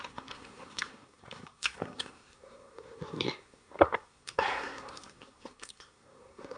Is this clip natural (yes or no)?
no